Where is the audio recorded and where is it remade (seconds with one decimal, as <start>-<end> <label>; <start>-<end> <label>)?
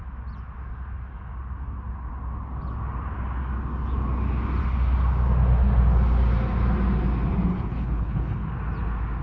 0.0-7.5 recorded; 7.5-8.5 remade; 8.5-9.2 recorded